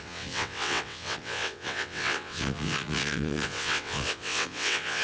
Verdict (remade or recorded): remade